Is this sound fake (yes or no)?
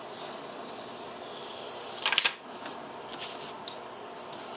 no